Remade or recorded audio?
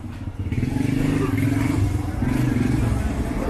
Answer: recorded